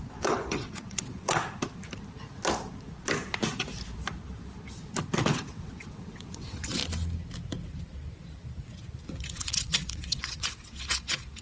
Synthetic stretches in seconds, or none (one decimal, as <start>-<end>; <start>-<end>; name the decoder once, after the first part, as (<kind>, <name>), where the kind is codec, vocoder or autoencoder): 0.0-1.4 (vocoder, WaveNeXt); 5.2-6.8; 9.1-11.4